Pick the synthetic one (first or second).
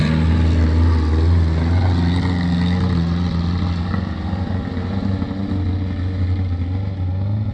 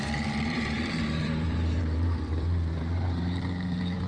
second